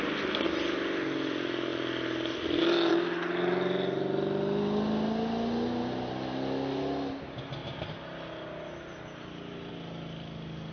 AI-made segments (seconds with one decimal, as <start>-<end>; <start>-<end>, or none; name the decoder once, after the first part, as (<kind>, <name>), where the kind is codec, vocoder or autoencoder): none